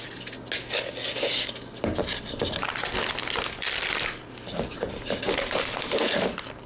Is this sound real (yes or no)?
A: yes